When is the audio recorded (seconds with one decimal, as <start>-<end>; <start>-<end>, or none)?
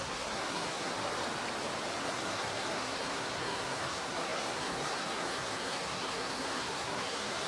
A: 0.9-2.0